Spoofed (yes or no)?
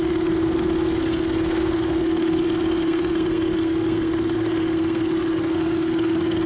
yes